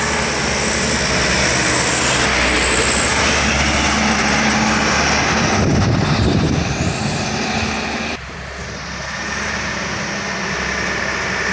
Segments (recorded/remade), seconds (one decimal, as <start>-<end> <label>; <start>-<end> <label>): 0.0-5.7 recorded; 5.7-8.4 remade; 8.4-11.5 recorded